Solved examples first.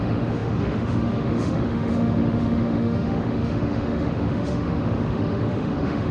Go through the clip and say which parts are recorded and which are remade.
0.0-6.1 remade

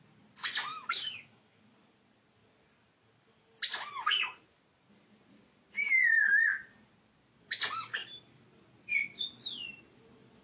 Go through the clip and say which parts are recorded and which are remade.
0.0-0.7 recorded; 0.7-1.6 remade; 1.6-10.4 recorded

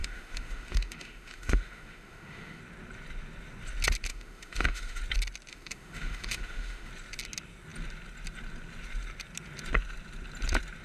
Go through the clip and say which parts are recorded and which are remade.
0.0-2.6 remade; 2.6-4.1 recorded; 4.1-5.0 remade; 5.0-5.5 recorded; 5.5-6.9 remade; 6.9-10.8 recorded

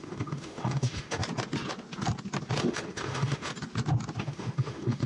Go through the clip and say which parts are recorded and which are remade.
0.0-1.2 remade; 1.2-2.6 recorded; 2.6-3.5 remade; 3.5-4.2 recorded; 4.2-5.1 remade

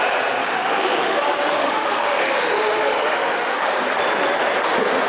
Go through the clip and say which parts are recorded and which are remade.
0.0-0.4 recorded; 0.4-1.2 remade; 1.2-1.6 recorded; 1.6-3.7 remade; 3.7-5.1 recorded

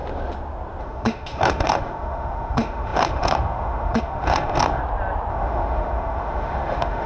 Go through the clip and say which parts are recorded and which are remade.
0.0-0.8 recorded; 0.8-4.8 remade; 4.8-5.3 recorded; 5.3-7.1 remade

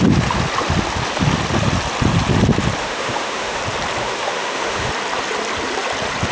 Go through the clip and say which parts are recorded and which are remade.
0.0-2.8 recorded; 2.8-3.6 remade; 3.6-4.0 recorded; 4.0-4.9 remade; 4.9-6.3 recorded